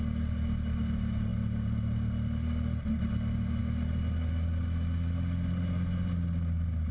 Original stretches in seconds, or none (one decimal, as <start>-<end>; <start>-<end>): 0.0-6.9